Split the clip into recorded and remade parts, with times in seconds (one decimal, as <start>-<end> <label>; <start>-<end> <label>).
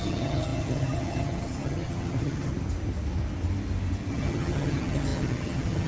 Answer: 0.0-2.5 remade; 2.5-4.1 recorded; 4.1-5.9 remade